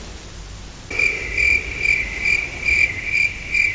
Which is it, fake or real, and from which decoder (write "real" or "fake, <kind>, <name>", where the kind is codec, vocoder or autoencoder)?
real